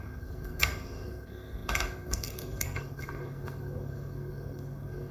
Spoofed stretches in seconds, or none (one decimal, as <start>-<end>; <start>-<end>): 0.0-5.1